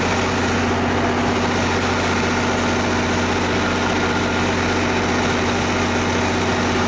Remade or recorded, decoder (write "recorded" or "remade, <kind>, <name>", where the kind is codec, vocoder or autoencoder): recorded